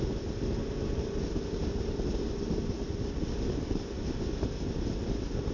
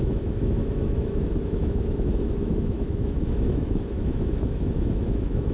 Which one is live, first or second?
first